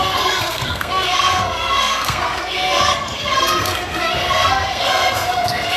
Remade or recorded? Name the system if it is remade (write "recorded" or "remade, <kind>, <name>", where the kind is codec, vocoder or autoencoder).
remade, codec, SNAC